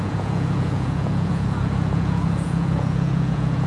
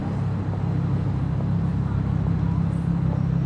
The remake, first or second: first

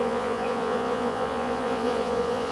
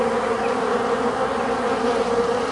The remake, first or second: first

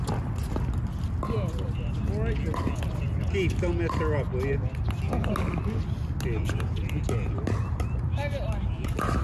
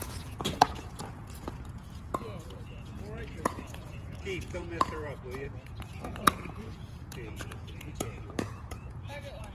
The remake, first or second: second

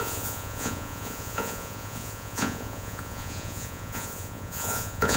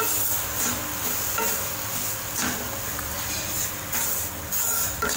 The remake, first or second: first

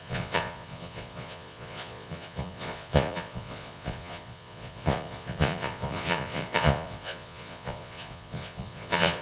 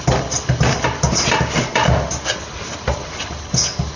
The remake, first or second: first